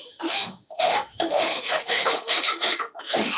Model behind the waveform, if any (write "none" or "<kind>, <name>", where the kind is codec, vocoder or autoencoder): autoencoder, DAC-VAE